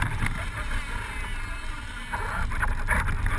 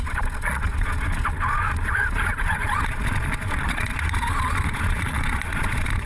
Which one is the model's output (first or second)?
second